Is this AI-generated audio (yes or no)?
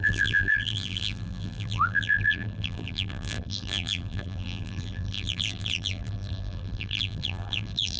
yes